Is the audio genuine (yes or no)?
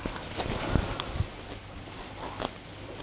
yes